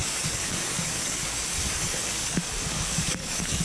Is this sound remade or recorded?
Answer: remade